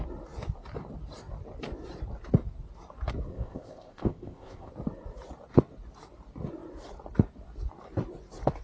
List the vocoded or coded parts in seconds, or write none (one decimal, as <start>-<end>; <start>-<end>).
3.3-4.7